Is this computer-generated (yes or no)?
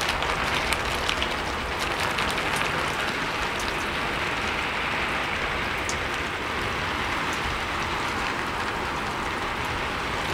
no